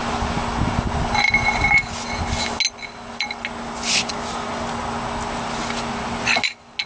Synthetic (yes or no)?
no